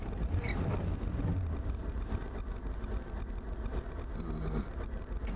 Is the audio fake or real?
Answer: real